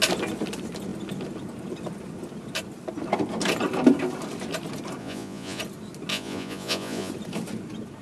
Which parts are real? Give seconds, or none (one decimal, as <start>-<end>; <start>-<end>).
0.0-5.0; 5.6-6.1; 7.1-8.0